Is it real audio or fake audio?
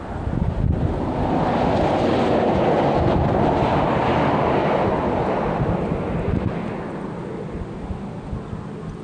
real